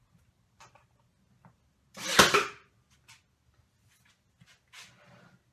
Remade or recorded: recorded